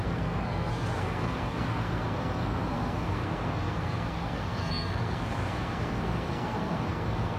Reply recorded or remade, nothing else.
remade